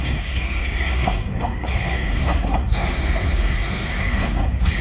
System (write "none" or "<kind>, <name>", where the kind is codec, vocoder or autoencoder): codec, SNAC